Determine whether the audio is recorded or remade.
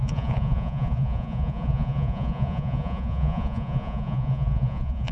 remade